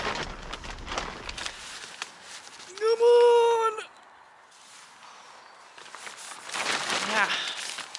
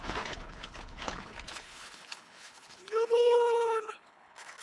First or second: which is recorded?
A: first